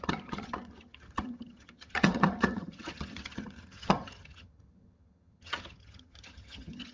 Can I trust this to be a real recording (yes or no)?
no